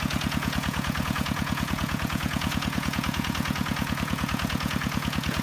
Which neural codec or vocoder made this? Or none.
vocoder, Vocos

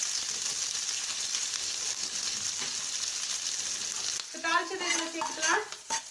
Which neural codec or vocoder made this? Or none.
none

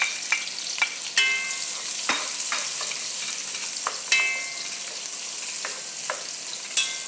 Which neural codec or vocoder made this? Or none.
none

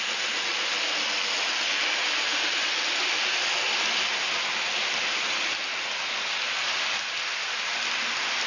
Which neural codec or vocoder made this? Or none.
none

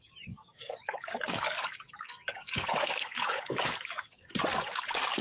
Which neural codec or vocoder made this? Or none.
codec, DAC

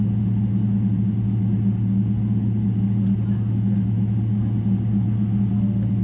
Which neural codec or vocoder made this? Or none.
none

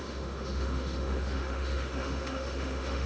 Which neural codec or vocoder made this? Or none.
autoencoder, DAC-VAE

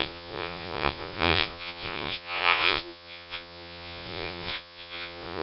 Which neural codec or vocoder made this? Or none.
vocoder, Vocos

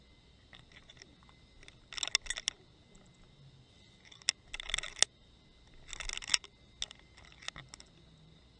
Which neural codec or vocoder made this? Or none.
none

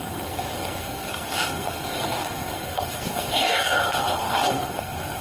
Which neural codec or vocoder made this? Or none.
codec, SNAC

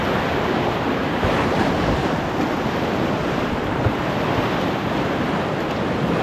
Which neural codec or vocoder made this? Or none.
none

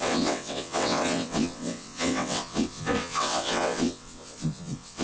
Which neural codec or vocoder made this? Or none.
vocoder, WaveNeXt